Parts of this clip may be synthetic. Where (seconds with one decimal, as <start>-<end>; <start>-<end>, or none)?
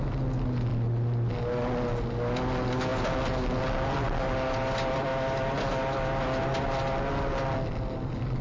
none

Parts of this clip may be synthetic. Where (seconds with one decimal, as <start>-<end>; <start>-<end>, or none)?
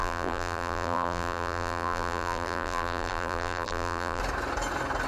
0.0-4.2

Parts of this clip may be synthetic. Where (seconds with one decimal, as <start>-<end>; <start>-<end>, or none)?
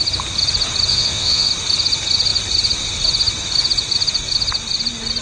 0.9-1.5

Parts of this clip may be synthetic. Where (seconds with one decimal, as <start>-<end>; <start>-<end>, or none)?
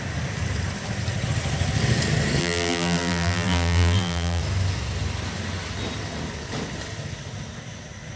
2.4-4.4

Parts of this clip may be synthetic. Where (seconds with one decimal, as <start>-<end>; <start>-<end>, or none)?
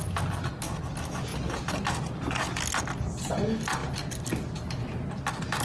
none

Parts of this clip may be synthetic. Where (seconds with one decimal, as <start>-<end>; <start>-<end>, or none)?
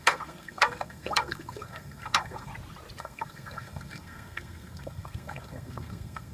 0.0-2.5; 3.0-6.3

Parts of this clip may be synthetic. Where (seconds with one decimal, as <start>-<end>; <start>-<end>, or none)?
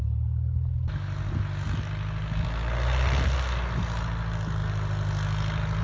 none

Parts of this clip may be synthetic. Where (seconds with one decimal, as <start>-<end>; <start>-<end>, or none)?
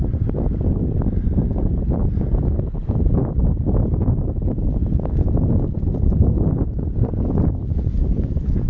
none